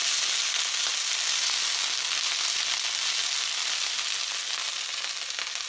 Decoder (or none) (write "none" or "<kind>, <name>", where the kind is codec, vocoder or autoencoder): none